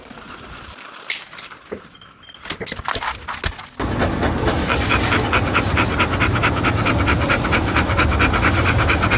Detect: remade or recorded recorded